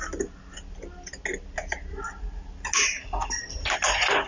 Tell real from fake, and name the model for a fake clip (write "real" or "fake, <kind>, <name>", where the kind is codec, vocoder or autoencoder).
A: real